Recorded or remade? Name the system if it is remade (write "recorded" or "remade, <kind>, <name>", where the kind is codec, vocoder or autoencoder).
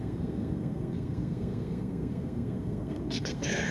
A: remade, codec, SNAC